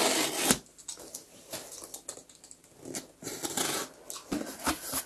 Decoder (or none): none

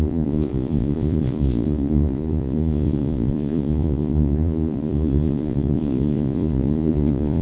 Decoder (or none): vocoder, Vocos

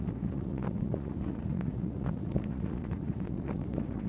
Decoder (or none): vocoder, Vocos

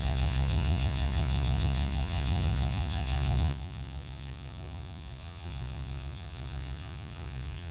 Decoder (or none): vocoder, Vocos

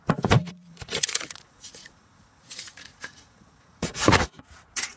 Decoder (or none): vocoder, Vocos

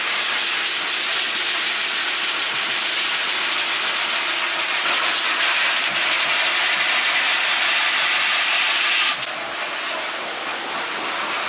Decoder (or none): none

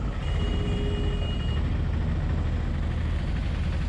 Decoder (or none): none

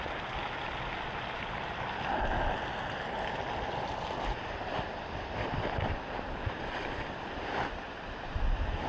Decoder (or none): none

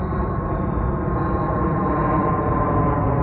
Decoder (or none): none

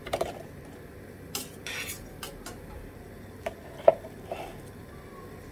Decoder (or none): none